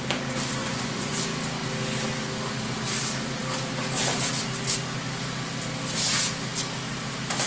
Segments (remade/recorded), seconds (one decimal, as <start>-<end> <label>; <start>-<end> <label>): 0.0-0.6 recorded; 0.6-1.2 remade; 1.2-7.5 recorded